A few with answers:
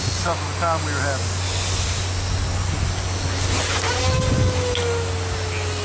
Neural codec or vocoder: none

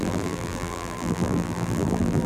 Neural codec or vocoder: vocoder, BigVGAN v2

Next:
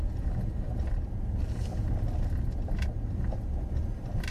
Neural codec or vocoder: none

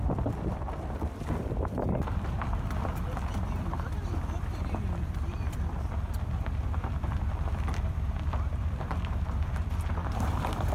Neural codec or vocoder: vocoder, BigVGAN v2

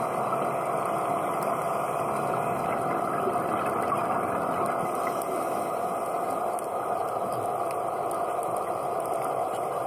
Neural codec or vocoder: none